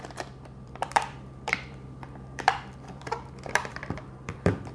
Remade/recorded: remade